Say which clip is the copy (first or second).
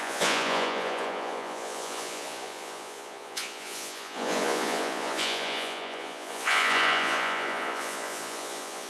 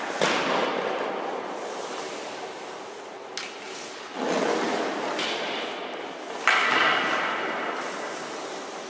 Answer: first